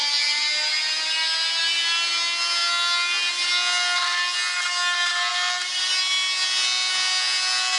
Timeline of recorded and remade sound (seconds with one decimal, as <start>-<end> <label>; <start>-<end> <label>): 0.0-7.8 recorded